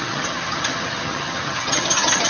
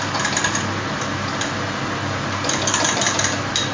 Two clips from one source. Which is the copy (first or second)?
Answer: first